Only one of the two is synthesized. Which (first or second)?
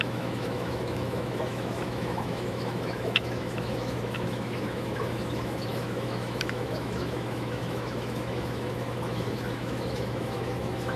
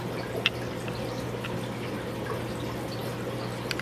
first